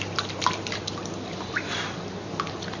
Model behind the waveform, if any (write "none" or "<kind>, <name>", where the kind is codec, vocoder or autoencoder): none